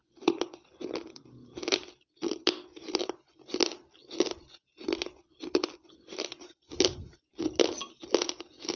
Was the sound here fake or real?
real